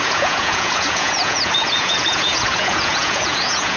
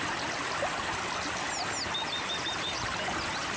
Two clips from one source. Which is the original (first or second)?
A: second